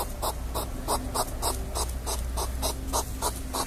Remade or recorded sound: recorded